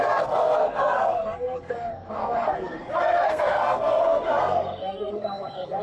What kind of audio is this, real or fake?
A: fake